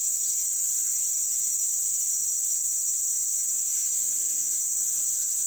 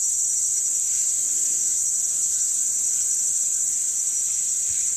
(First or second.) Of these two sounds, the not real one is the second